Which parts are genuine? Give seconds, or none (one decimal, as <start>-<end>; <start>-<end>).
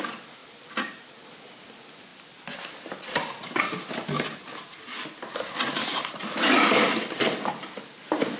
0.0-8.4